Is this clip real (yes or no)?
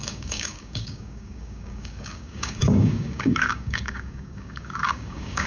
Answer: no